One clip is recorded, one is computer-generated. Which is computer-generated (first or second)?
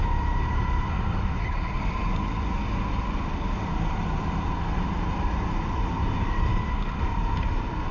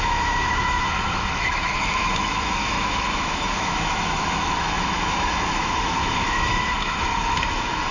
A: second